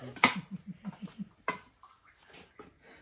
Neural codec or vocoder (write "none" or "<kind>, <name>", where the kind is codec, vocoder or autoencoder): none